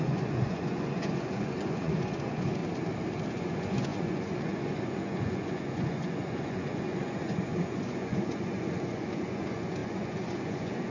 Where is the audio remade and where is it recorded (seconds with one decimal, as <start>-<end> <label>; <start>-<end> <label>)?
0.0-2.6 remade; 2.6-3.3 recorded; 3.3-10.9 remade